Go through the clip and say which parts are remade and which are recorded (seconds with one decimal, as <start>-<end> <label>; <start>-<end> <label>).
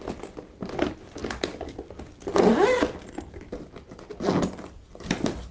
0.0-5.5 recorded